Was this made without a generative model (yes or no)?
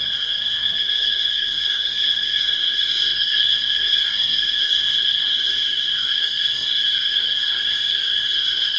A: no